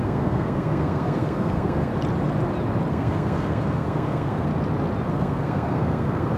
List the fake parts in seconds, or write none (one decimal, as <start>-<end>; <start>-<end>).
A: 0.0-1.9; 2.9-4.5; 5.1-6.4